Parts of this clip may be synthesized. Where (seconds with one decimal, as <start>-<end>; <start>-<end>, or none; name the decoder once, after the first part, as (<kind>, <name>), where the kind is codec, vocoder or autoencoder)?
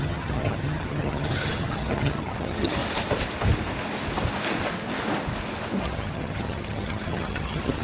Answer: 0.0-2.8 (vocoder, HiFi-GAN); 5.8-7.8